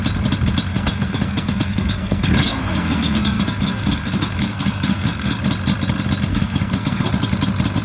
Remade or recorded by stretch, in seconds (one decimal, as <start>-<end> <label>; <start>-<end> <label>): 0.0-0.7 recorded; 0.7-5.4 remade; 5.4-6.3 recorded; 6.3-7.1 remade; 7.1-7.8 recorded